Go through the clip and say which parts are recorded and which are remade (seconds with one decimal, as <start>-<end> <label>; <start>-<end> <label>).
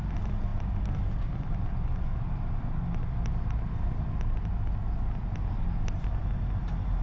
0.0-7.0 recorded